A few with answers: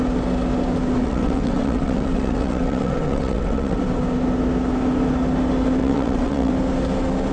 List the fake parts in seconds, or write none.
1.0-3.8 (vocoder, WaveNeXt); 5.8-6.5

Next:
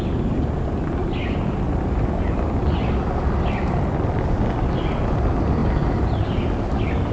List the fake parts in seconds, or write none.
none

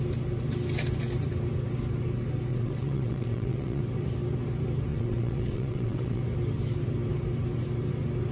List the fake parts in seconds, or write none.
2.5-3.8 (vocoder, WaveNeXt); 4.9-6.2

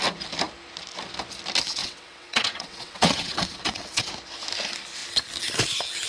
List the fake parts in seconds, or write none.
1.8-4.1 (vocoder, WaveNeXt)

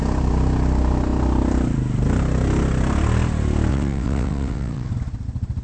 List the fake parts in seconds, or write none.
3.7-4.9 (vocoder, WaveNeXt)

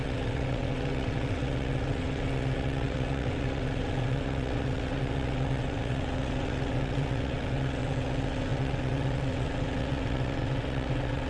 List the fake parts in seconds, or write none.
0.0-11.3 (vocoder, WaveNeXt)

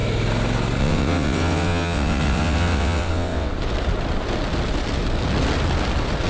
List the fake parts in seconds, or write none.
0.8-3.5 (vocoder, WaveNeXt)